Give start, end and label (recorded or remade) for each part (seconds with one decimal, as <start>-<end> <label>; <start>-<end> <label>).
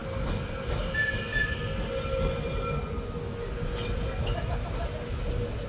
0.0-5.7 recorded